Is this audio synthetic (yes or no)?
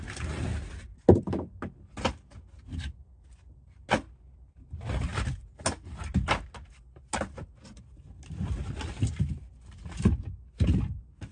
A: no